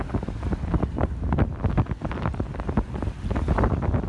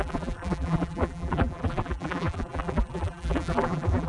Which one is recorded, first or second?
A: first